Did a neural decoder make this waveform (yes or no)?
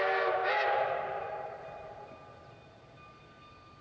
no